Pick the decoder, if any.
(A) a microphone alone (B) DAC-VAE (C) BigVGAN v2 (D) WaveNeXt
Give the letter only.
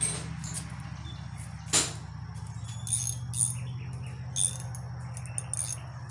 A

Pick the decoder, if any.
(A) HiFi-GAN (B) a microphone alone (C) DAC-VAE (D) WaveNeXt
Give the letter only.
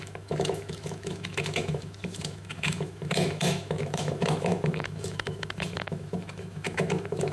C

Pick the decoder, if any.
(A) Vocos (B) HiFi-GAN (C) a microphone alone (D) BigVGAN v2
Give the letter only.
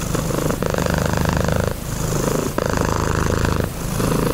C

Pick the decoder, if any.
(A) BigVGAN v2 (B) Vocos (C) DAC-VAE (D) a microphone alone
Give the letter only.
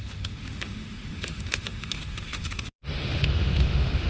C